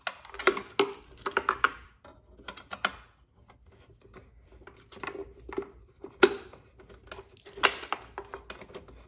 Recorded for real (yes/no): yes